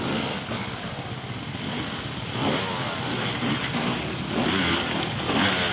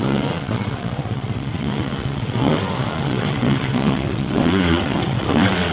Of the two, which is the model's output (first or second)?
second